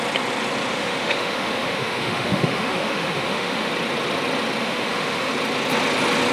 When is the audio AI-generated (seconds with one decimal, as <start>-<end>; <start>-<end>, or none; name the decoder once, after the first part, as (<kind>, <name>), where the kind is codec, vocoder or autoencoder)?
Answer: 0.7-3.7 (autoencoder, DAC-VAE); 4.6-5.3